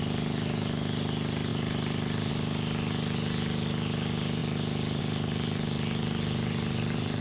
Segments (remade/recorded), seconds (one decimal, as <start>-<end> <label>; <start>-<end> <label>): 0.0-7.2 recorded